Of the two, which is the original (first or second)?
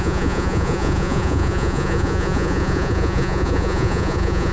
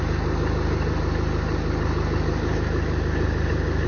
second